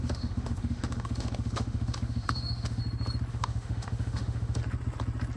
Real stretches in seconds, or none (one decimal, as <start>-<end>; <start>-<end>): 2.8-3.3; 4.6-5.4

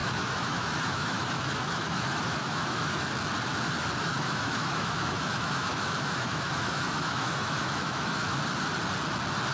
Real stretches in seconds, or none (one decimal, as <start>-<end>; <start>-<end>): 3.1-4.1; 8.4-9.5

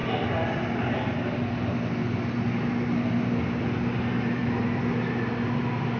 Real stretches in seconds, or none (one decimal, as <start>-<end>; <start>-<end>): 0.0-6.0

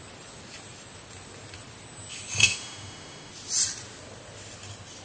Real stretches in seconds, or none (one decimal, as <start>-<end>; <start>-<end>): 0.0-2.4; 3.3-5.0

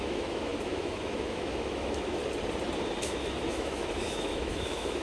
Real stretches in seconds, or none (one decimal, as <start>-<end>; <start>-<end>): 2.2-3.1

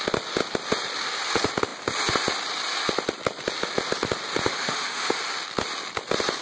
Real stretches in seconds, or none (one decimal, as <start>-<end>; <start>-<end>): 0.0-4.5; 5.2-6.4

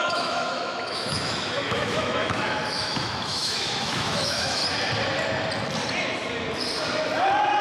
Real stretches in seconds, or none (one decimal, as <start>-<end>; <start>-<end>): 4.6-7.6